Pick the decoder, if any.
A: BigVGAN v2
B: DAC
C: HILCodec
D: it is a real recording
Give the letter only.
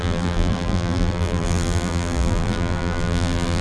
A